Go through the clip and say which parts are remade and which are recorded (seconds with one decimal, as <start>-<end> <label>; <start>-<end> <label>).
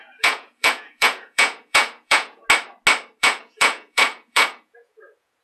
0.0-2.4 remade; 2.4-3.2 recorded; 3.2-5.4 remade